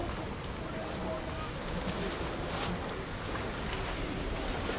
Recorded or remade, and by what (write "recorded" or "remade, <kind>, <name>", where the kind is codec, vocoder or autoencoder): recorded